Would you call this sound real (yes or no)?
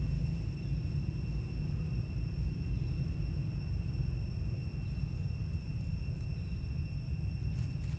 yes